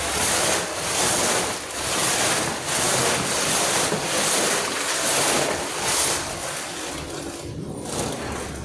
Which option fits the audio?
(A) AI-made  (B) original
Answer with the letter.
B